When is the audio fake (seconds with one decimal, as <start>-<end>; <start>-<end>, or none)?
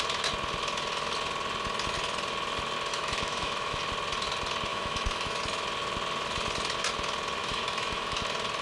2.9-3.8; 4.7-5.4; 7.4-8.2